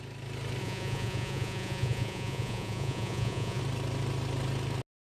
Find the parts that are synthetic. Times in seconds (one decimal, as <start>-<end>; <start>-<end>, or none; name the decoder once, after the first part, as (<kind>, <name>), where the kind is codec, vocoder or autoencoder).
0.6-3.6 (vocoder, Vocos)